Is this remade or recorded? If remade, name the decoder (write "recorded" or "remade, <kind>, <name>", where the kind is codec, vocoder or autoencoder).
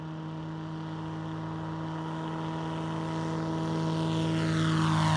recorded